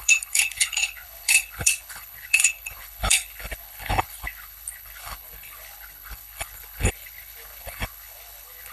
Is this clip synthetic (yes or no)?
yes